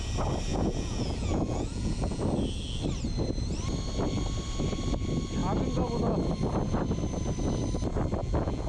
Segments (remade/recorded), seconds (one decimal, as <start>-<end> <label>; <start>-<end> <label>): 0.0-0.5 recorded; 0.5-2.2 remade; 2.2-8.2 recorded; 8.2-8.7 remade